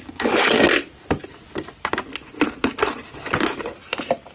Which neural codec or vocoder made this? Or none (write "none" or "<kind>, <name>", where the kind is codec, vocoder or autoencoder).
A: none